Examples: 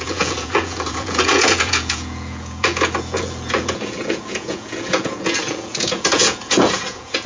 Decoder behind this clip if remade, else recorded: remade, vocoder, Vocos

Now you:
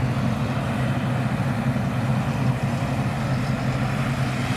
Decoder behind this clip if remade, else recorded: recorded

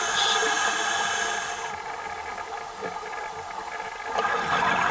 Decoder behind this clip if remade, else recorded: recorded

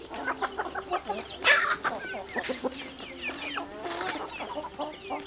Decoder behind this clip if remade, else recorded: recorded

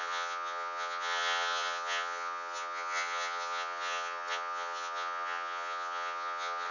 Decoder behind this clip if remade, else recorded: remade, vocoder, HiFi-GAN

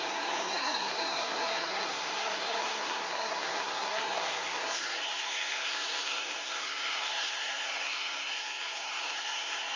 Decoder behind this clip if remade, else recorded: remade, codec, SNAC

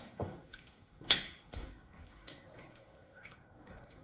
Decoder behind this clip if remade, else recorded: remade, codec, SNAC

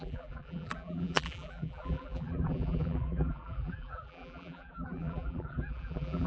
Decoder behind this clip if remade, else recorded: remade, vocoder, BigVGAN v2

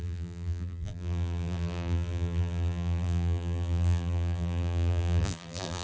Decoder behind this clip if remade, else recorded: remade, vocoder, BigVGAN v2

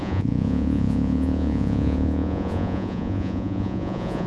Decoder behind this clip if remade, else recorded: remade, vocoder, Vocos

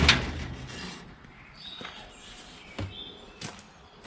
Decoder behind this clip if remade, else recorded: recorded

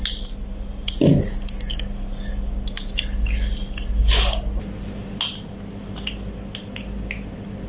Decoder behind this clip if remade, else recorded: recorded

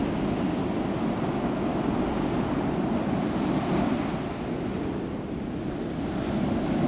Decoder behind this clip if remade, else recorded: recorded